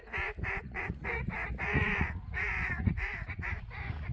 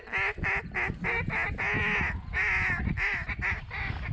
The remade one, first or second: first